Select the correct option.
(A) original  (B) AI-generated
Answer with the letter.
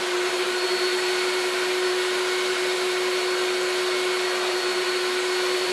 A